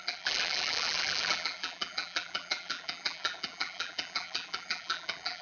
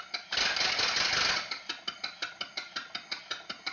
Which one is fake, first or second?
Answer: first